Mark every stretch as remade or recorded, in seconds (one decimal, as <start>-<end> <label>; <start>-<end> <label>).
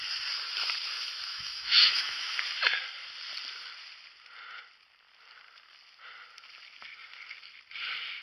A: 0.0-1.3 recorded; 1.3-2.4 remade; 2.4-8.2 recorded